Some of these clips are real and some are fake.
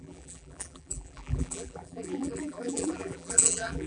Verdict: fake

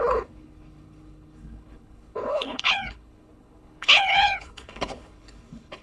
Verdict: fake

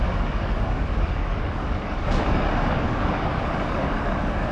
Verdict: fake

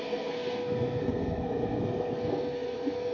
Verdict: fake